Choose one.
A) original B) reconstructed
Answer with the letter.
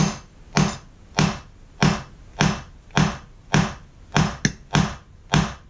A